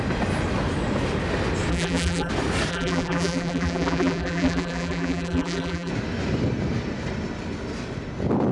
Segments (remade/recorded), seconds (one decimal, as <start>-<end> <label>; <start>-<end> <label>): 0.0-1.7 recorded; 1.7-2.3 remade; 2.3-2.7 recorded; 2.7-5.9 remade; 5.9-8.5 recorded